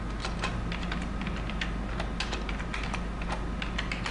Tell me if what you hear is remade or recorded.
recorded